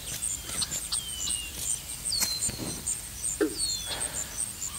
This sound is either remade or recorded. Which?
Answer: recorded